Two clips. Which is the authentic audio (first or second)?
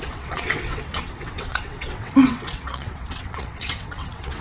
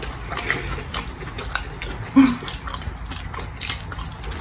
second